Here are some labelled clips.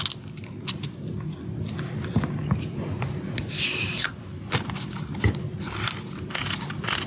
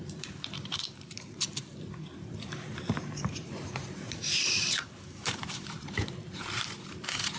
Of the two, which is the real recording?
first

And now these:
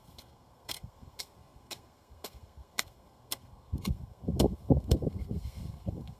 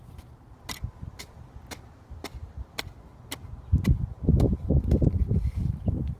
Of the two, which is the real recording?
second